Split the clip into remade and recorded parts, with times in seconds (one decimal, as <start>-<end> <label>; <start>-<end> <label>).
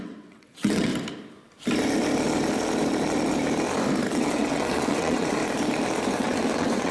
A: 0.0-0.9 remade; 0.9-4.1 recorded; 4.1-5.4 remade; 5.4-6.1 recorded; 6.1-6.9 remade